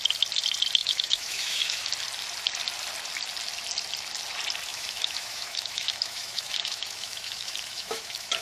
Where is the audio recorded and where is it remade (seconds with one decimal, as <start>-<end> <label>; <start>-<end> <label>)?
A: 0.0-0.8 recorded; 0.8-1.9 remade; 1.9-4.7 recorded; 4.7-8.4 remade